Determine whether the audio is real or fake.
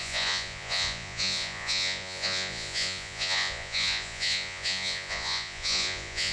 fake